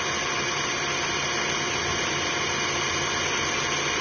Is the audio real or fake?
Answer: real